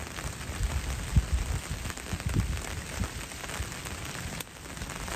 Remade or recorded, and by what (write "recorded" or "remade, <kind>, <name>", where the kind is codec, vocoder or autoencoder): recorded